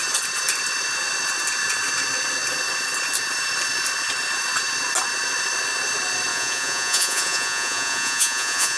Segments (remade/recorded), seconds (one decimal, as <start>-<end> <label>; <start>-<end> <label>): 0.0-6.3 recorded; 6.3-8.8 remade